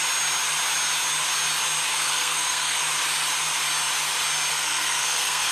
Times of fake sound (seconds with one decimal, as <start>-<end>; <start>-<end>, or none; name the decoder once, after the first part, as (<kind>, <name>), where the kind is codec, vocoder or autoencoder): 1.9-2.8 (codec, SNAC); 4.5-5.5

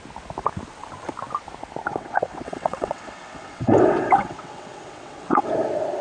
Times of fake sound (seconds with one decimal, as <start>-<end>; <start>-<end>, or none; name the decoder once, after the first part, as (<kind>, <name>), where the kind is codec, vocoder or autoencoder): 1.9-5.5 (vocoder, WaveNeXt)

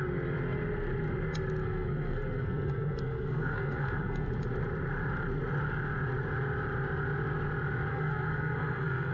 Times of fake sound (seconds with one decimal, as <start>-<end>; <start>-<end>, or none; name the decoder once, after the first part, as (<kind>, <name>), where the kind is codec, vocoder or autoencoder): 1.6-4.3 (codec, SNAC); 7.9-9.1